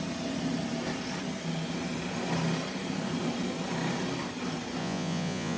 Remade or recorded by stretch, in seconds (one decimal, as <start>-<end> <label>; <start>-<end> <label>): 0.0-4.8 recorded; 4.8-5.6 remade